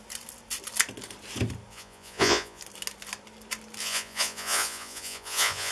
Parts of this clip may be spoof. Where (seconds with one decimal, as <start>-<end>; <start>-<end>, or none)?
1.7-2.6; 3.8-5.7